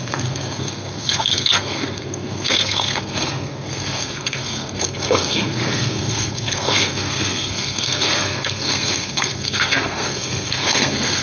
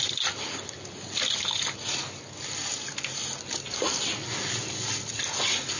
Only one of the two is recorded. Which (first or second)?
second